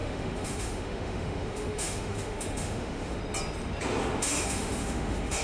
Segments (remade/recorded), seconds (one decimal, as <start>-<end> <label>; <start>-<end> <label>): 0.0-3.2 remade; 3.2-4.2 recorded; 4.2-5.4 remade